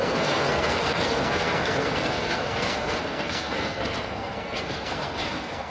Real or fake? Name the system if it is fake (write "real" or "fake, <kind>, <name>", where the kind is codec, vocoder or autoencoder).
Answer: fake, codec, SNAC